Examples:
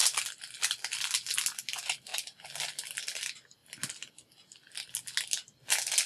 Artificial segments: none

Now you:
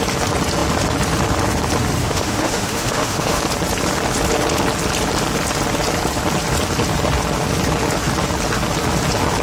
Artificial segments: 2.0-3.4

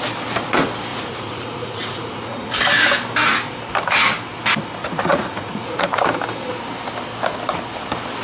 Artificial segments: 0.9-2.5; 4.8-6.0

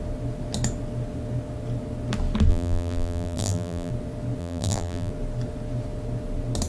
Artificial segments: 2.5-3.9; 4.4-5.1

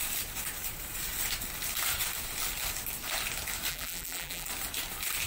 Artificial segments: 3.7-4.5

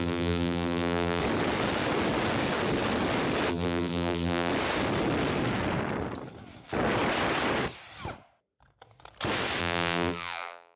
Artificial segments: 0.0-1.2; 3.5-4.5; 9.6-10.8